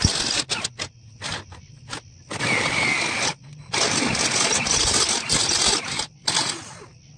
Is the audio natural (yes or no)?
yes